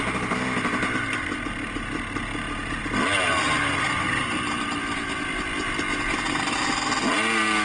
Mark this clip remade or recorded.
recorded